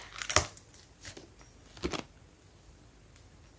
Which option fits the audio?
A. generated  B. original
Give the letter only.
B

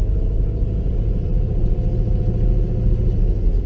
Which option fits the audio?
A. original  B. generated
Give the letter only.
A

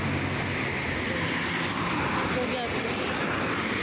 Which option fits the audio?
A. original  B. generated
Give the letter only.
A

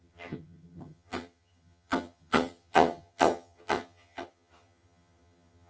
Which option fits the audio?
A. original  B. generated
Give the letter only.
B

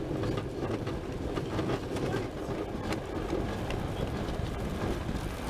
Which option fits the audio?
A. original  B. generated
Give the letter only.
A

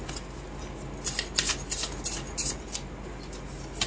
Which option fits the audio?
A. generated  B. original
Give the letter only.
B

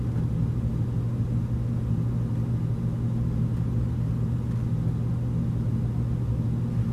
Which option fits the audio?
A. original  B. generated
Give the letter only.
A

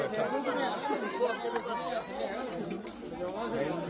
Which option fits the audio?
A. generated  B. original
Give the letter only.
B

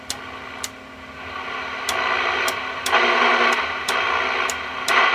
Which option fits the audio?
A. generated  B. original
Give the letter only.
B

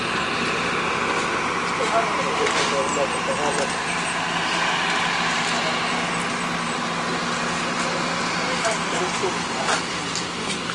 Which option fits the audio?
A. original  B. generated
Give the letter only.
B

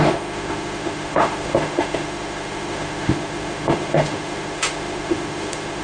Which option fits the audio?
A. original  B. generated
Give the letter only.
B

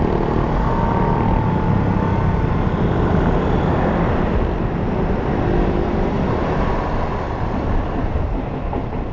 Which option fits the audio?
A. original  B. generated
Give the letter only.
A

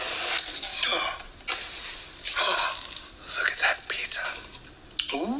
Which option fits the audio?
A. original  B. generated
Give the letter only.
A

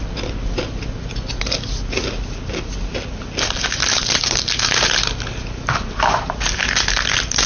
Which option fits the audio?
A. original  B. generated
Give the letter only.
A